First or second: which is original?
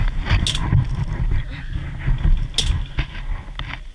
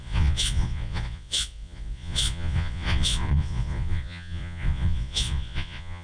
first